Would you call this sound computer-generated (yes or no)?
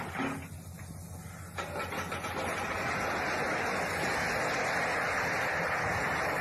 no